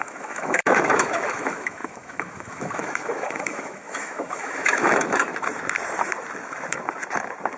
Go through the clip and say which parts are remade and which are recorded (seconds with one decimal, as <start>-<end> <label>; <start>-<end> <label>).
0.0-5.3 remade; 5.3-7.6 recorded